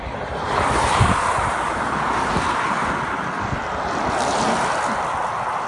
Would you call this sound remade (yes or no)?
no